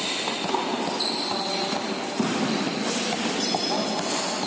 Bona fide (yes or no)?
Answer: yes